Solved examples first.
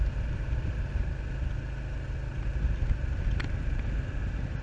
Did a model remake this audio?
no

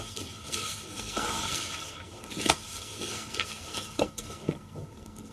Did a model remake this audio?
yes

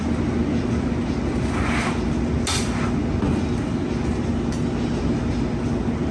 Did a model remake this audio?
no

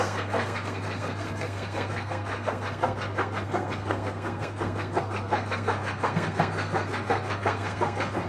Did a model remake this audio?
yes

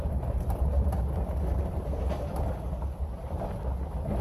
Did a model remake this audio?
no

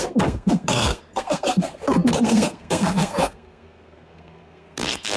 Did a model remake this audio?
yes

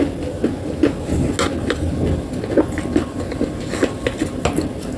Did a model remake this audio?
no